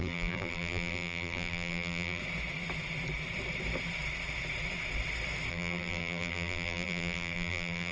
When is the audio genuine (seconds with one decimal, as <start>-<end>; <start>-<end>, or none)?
2.2-5.5